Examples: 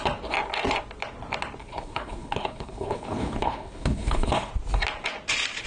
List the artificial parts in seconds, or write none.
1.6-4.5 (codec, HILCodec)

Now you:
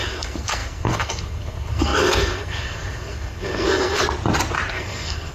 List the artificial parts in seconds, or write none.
0.0-4.0 (codec, SNAC); 4.7-5.3

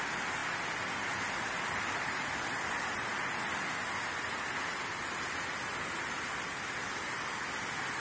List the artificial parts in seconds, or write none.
none

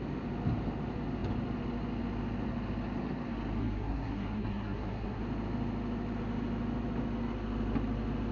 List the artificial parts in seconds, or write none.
3.6-5.2 (codec, SNAC)

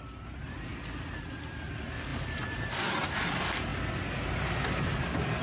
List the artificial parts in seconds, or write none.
none

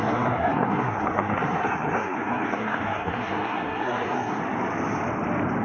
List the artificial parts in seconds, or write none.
0.0-4.4 (codec, SNAC)

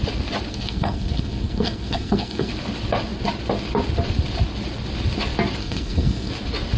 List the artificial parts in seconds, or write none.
0.5-2.5 (codec, SNAC); 5.6-6.3

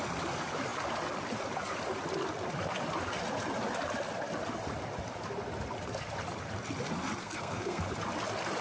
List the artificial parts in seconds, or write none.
7.2-7.8 (codec, SNAC)